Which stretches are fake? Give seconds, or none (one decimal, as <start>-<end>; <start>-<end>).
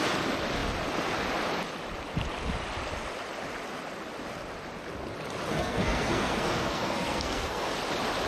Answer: 5.5-7.7